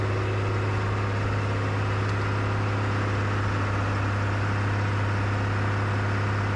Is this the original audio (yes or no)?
yes